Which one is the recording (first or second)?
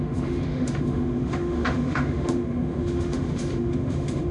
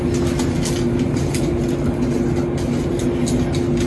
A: second